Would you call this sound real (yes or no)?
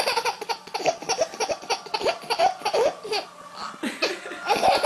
yes